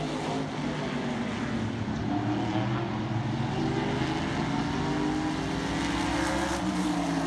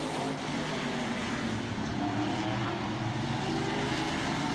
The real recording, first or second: first